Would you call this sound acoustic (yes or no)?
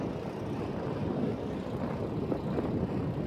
yes